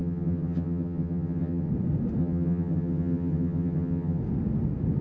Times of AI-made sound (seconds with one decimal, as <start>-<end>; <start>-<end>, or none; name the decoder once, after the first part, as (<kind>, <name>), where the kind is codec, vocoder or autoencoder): 0.0-1.7 (vocoder, HiFi-GAN); 2.2-4.2